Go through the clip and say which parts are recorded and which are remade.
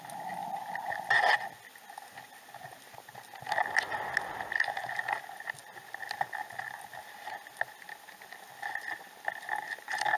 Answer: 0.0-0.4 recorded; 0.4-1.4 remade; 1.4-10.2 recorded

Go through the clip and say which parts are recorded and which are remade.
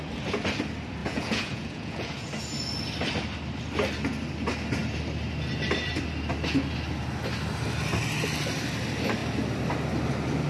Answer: 0.0-1.0 recorded; 1.0-2.3 remade; 2.3-10.5 recorded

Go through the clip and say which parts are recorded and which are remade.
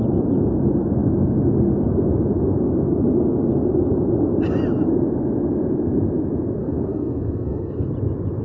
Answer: 0.0-6.6 recorded; 6.6-7.9 remade; 7.9-8.4 recorded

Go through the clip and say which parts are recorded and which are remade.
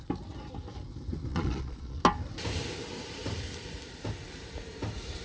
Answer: 0.0-1.3 recorded; 1.3-2.0 remade; 2.0-5.2 recorded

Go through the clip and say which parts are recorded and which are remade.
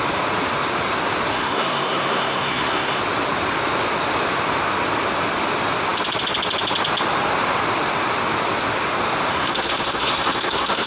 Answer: 0.0-1.3 recorded; 1.3-3.0 remade; 3.0-9.3 recorded; 9.3-10.9 remade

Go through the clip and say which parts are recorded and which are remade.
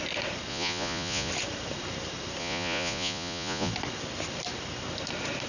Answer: 0.0-0.5 recorded; 0.5-1.3 remade; 1.3-2.4 recorded; 2.4-3.7 remade; 3.7-5.5 recorded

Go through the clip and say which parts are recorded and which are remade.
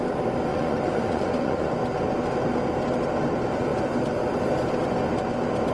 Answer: 0.0-0.5 recorded; 0.5-1.8 remade; 1.8-5.7 recorded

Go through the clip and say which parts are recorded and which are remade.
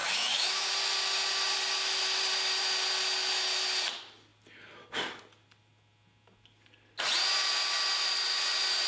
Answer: 0.0-0.7 remade; 0.7-8.9 recorded